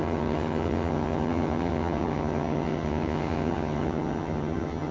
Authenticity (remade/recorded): remade